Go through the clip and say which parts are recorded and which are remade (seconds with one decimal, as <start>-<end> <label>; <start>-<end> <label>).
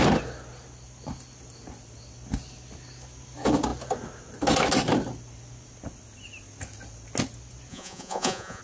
0.0-7.7 recorded; 7.7-8.6 remade